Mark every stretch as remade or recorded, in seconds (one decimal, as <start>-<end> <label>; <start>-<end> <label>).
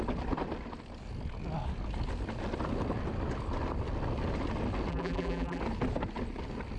0.0-4.9 recorded; 4.9-5.6 remade; 5.6-6.8 recorded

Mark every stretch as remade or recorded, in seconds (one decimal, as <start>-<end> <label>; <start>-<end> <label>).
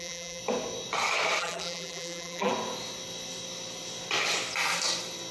0.0-0.4 remade; 0.4-1.4 recorded; 1.4-2.5 remade; 2.5-5.3 recorded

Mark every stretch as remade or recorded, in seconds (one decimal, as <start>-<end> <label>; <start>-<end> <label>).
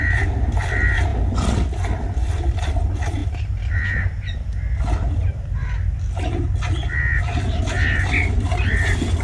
0.0-9.2 recorded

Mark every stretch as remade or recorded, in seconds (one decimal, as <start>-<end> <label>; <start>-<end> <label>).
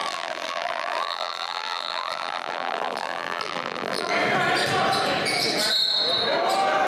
0.0-4.1 remade; 4.1-6.9 recorded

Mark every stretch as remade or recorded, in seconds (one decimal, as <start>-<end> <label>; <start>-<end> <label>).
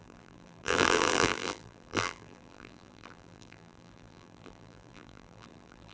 0.0-5.9 remade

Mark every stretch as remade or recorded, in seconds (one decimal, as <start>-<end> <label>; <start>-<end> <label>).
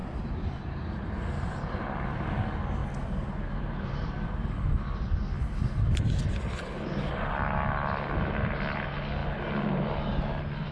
0.0-2.4 remade; 2.4-2.8 recorded; 2.8-7.1 remade; 7.1-10.7 recorded